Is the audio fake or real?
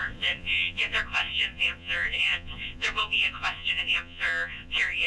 fake